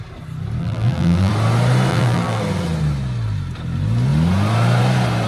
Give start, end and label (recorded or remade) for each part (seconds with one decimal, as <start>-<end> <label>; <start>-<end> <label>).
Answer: 0.0-0.6 recorded; 0.6-1.3 remade; 1.3-1.9 recorded; 1.9-2.4 remade; 2.4-5.3 recorded